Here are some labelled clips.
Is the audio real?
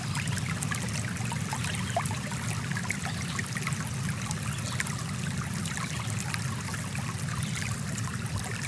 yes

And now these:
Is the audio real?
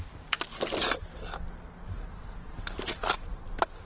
yes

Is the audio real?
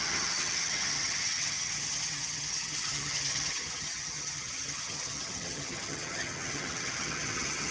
no